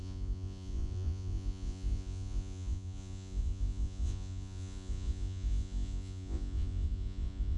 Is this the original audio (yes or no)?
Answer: no